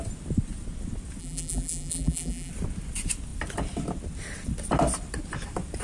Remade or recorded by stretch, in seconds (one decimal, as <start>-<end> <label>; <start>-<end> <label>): 0.0-1.2 recorded; 1.2-2.5 remade; 2.5-5.8 recorded